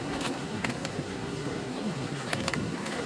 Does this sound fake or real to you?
fake